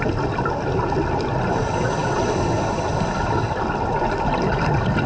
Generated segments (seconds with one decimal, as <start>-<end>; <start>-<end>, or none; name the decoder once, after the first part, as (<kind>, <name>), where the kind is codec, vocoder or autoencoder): none